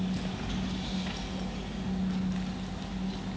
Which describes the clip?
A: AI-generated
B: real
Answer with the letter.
B